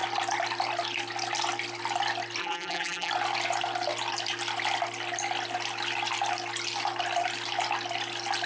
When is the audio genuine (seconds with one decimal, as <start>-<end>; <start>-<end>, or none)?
0.0-2.4; 3.1-8.5